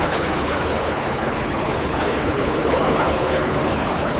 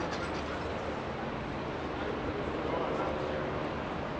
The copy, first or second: first